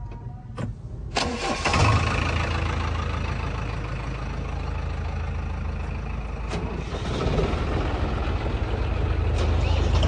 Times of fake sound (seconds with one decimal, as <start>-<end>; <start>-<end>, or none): none